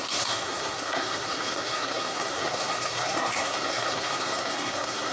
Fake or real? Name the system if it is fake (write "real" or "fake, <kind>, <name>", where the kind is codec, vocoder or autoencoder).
fake, codec, SNAC